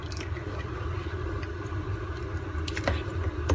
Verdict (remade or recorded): remade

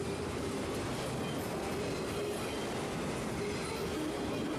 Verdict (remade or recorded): recorded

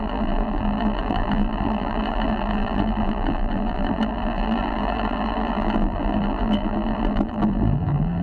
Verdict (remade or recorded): remade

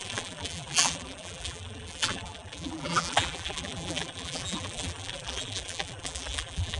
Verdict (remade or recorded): remade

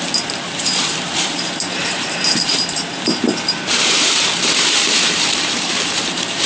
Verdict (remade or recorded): remade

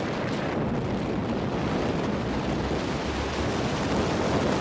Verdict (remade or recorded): recorded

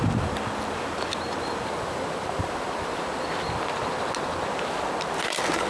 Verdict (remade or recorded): recorded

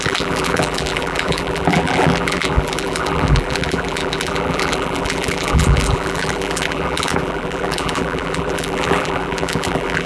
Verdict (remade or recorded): remade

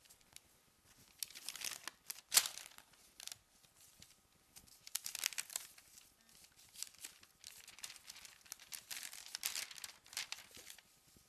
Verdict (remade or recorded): recorded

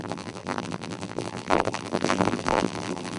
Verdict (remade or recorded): remade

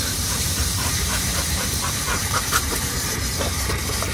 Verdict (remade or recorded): remade